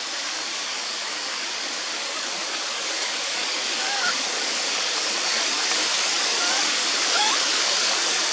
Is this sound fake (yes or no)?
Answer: yes